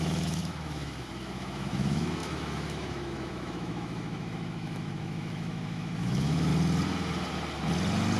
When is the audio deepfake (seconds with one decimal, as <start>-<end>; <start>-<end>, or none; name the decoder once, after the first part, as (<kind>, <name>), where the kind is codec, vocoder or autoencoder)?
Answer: 0.0-6.5 (autoencoder, DAC-VAE)